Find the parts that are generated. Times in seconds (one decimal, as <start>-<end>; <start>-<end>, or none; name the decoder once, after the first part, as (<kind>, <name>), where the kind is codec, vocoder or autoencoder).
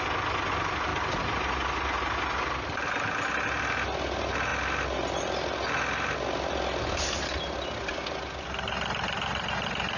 none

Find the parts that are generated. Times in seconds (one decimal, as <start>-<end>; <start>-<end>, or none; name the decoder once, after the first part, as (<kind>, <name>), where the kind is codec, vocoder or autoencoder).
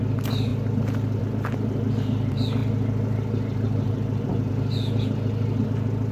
none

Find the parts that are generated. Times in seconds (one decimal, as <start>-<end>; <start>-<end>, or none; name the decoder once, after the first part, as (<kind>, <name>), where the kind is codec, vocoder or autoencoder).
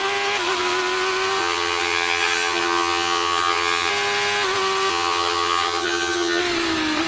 1.4-3.9 (vocoder, HiFi-GAN); 4.9-6.4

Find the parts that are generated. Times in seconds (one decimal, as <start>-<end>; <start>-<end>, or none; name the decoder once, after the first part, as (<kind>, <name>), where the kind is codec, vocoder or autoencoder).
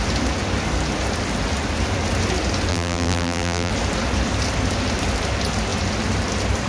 2.7-3.7 (vocoder, BigVGAN v2)